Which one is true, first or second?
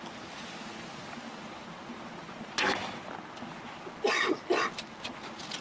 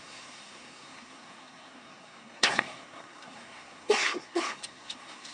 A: first